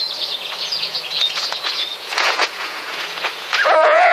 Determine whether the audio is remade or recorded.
remade